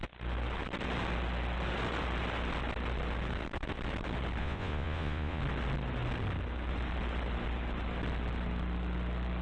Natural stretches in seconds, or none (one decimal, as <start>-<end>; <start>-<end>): 0.0-4.4; 5.4-9.4